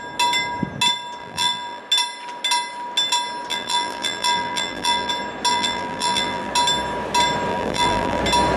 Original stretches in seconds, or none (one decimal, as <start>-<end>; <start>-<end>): 0.0-1.2; 1.8-3.5; 5.1-5.5; 6.5-7.5; 8.2-8.6